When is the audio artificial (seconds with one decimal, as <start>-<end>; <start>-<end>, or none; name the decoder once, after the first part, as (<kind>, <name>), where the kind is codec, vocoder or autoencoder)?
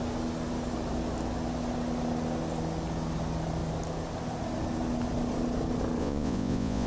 6.0-6.9 (vocoder, Vocos)